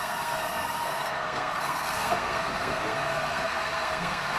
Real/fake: fake